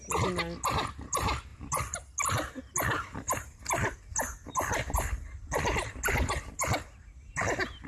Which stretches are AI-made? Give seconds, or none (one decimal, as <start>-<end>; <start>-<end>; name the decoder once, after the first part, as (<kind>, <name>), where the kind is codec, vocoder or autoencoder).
none